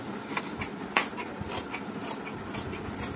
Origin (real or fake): real